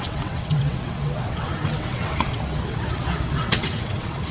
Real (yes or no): no